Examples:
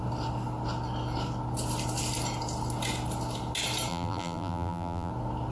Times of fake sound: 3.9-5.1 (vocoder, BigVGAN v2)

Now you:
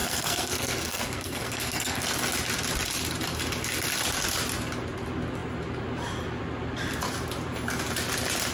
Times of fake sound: 0.0-2.0 (codec, SNAC)

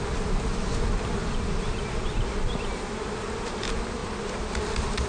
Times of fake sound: none

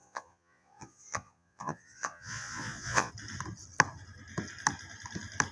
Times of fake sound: 0.0-3.1 (vocoder, Vocos)